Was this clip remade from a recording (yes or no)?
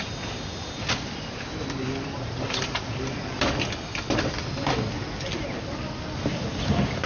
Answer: no